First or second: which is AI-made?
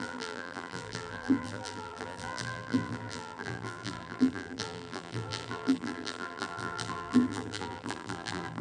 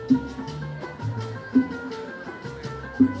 first